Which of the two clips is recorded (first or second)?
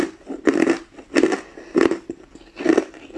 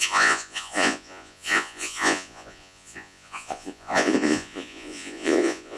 first